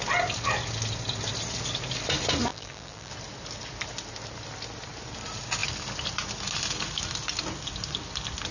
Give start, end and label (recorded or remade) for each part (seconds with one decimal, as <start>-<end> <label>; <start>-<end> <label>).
0.0-2.5 recorded; 2.5-3.1 remade; 3.1-8.5 recorded